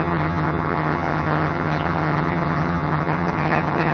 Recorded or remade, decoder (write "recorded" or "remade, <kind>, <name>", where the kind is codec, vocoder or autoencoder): remade, vocoder, HiFi-GAN